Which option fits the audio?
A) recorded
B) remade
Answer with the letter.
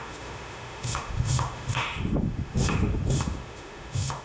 B